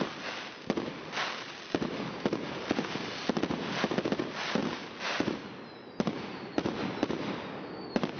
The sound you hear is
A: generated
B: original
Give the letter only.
B